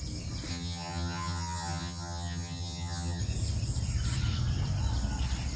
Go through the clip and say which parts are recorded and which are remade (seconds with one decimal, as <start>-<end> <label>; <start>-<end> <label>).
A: 0.0-0.5 recorded; 0.5-3.2 remade; 3.2-5.6 recorded